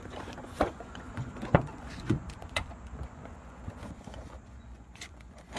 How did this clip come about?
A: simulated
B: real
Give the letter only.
A